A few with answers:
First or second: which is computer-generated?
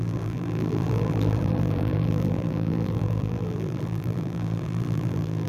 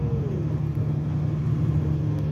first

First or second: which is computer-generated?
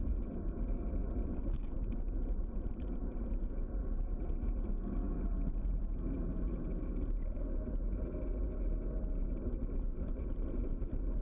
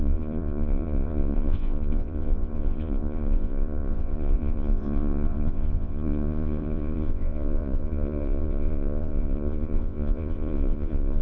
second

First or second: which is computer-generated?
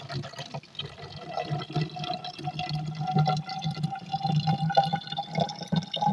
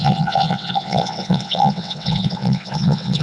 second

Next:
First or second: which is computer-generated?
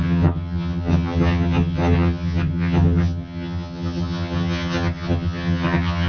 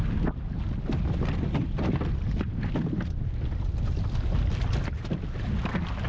first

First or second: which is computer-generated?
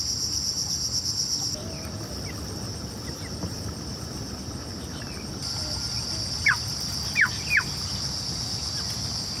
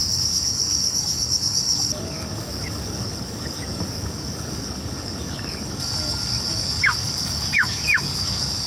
second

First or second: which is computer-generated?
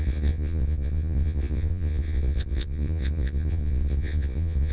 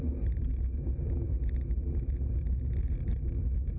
first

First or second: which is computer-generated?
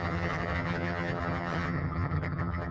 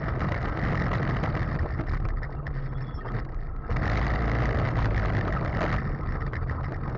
first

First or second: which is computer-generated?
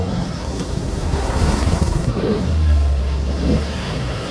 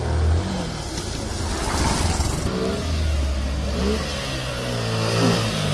first